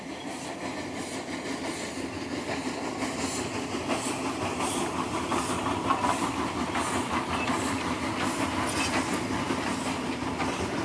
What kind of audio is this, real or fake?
real